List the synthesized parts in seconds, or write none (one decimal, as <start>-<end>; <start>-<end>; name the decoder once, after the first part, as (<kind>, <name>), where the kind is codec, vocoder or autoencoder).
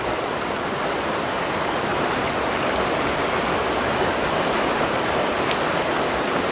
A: none